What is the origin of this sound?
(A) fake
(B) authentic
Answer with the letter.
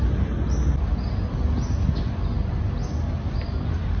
B